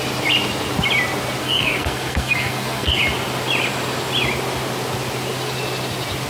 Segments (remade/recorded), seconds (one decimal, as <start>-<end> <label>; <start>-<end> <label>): 0.0-1.4 recorded; 1.4-3.0 remade; 3.0-6.3 recorded